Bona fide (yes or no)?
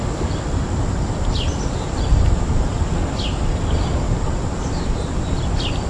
yes